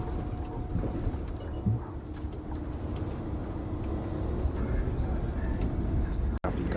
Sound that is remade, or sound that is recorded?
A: recorded